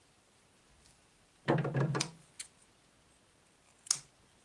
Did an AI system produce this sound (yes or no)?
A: no